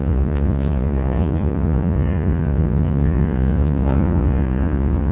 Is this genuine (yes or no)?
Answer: no